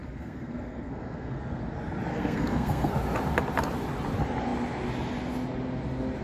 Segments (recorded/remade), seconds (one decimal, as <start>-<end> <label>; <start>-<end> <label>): 0.0-1.6 remade; 1.6-2.1 recorded; 2.1-2.9 remade; 2.9-6.2 recorded